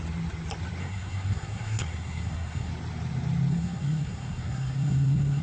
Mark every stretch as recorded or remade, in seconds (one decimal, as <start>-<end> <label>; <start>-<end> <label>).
0.0-0.8 recorded; 0.8-2.7 remade; 2.7-3.5 recorded; 3.5-5.4 remade